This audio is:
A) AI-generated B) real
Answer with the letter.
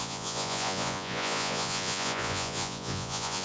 A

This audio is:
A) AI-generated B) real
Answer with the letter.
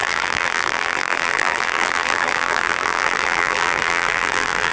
A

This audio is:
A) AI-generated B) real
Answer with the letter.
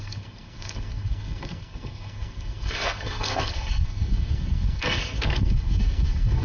A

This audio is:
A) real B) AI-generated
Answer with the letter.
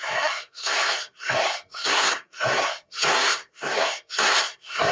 B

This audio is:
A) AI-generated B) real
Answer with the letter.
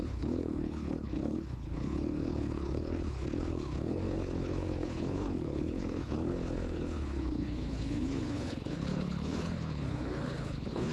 A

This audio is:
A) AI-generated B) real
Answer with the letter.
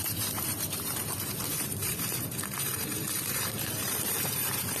A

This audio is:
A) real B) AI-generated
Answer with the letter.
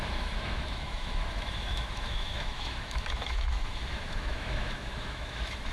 B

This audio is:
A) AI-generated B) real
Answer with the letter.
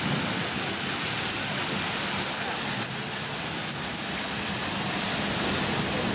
B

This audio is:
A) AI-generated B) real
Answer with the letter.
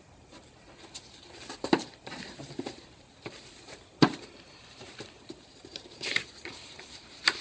A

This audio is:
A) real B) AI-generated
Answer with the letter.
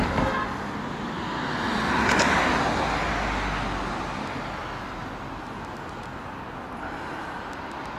A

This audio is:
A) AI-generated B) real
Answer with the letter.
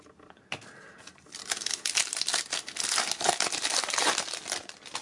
B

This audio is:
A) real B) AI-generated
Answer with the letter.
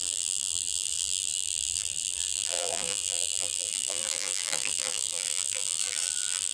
B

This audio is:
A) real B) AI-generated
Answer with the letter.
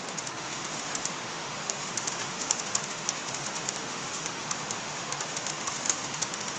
B